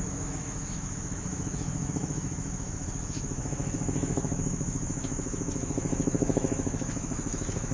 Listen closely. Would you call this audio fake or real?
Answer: fake